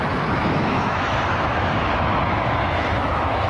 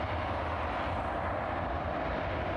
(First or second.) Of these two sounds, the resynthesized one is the first